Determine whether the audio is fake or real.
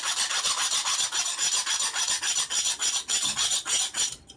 real